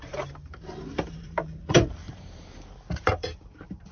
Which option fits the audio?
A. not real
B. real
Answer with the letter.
A